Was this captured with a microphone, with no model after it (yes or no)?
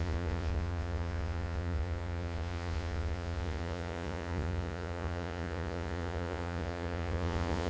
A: no